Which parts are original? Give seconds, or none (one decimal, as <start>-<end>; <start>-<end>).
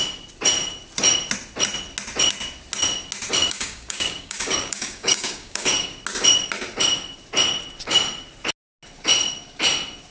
0.0-3.4; 6.0-10.1